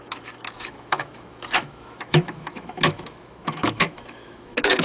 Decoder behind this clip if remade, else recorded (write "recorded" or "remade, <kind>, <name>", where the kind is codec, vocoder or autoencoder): remade, autoencoder, DAC-VAE